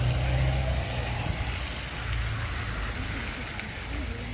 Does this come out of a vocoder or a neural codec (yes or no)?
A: no